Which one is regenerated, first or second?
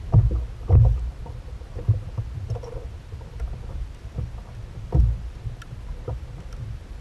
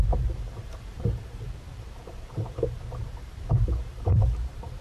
second